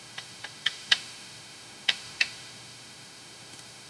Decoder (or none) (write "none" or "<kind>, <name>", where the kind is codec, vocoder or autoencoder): autoencoder, DAC-VAE